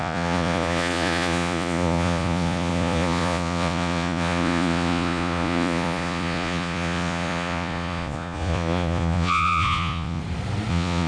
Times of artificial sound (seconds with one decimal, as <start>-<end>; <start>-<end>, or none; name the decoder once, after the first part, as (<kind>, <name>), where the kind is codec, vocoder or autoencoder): 0.0-10.2 (vocoder, Vocos); 10.7-11.1